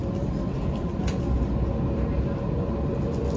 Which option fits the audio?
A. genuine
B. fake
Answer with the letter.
A